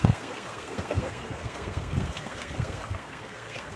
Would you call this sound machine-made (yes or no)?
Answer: yes